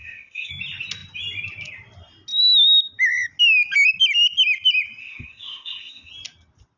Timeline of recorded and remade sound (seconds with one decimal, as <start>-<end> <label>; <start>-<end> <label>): 0.0-0.5 remade; 0.5-5.0 recorded; 5.0-6.1 remade; 6.1-6.8 recorded